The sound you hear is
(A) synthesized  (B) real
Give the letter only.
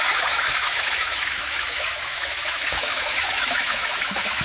A